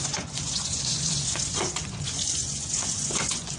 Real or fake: fake